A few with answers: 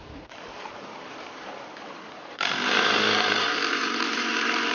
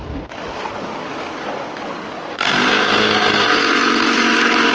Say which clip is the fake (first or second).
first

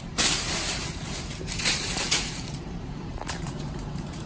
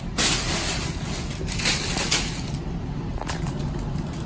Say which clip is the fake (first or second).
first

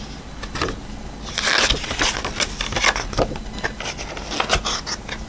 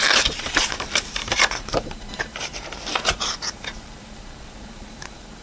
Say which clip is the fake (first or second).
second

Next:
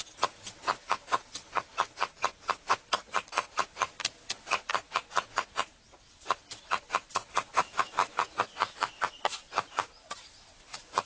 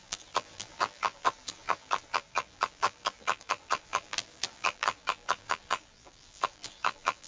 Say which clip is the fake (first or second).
second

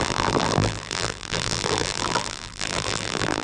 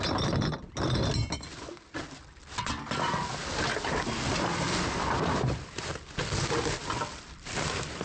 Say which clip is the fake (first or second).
first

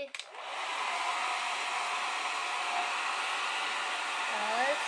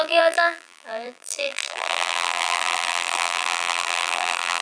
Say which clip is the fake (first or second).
second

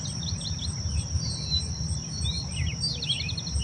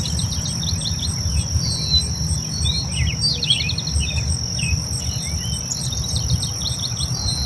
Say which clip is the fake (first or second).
first